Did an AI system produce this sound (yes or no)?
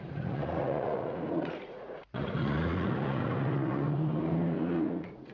yes